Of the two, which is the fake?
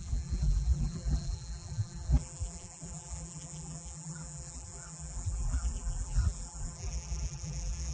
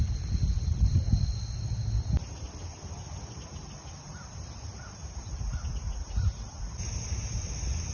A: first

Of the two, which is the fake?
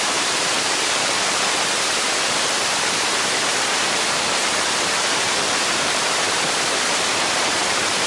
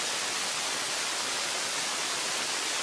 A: first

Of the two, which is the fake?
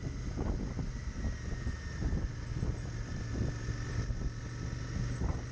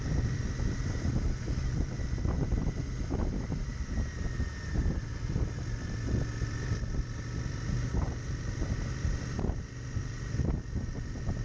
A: second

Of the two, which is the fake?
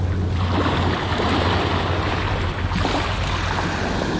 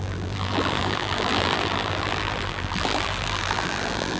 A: second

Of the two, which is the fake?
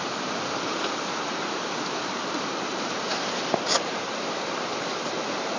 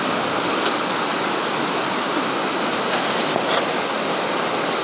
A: first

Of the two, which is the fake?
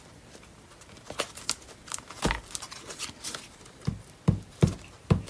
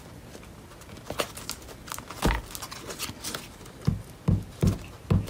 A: first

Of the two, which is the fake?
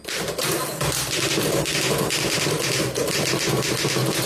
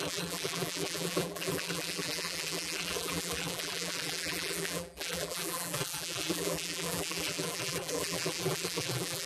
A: second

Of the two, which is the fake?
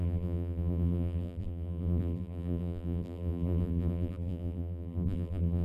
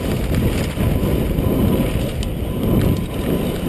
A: first